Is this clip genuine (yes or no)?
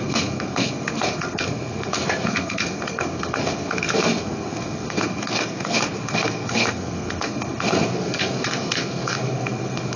no